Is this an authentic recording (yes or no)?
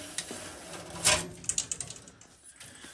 yes